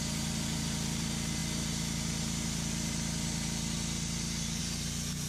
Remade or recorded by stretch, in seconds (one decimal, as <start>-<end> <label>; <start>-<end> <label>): 0.0-5.3 recorded